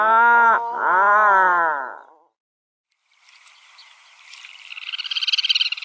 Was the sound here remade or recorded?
recorded